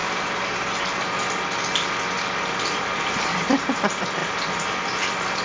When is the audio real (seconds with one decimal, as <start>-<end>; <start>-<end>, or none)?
0.0-5.4